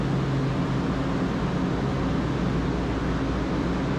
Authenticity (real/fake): real